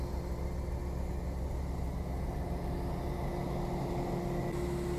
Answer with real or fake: real